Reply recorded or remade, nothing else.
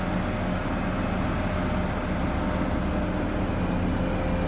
recorded